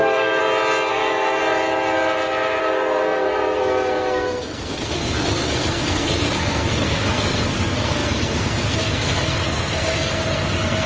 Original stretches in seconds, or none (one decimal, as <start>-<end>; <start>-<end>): 0.4-0.9; 1.4-2.6